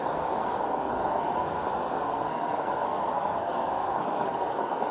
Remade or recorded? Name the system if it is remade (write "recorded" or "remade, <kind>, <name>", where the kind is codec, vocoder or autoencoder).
remade, codec, SNAC